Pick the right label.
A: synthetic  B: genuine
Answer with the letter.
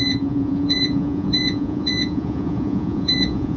A